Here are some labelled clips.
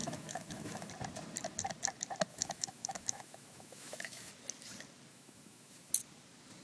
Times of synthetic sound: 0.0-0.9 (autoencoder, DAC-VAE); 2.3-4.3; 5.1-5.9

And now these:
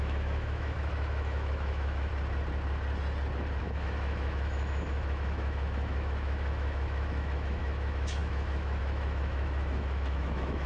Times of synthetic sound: 0.0-2.1 (autoencoder, DAC-VAE); 3.6-10.7

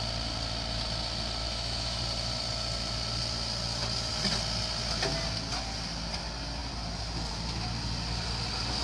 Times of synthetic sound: 1.4-2.0 (autoencoder, DAC-VAE)

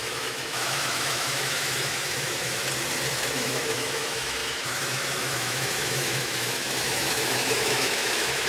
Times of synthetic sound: 0.0-2.6 (autoencoder, DAC-VAE); 3.1-8.5